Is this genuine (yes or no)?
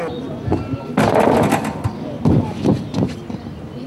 yes